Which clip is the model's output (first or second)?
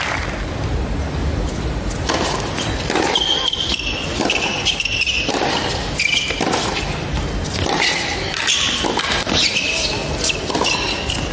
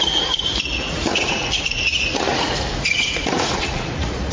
second